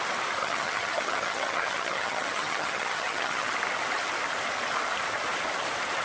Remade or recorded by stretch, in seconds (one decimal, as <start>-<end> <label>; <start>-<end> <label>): 0.0-0.4 recorded; 0.4-3.5 remade; 3.5-6.0 recorded